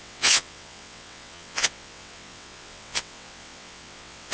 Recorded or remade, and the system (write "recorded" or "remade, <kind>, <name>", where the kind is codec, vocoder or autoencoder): remade, vocoder, WaveNeXt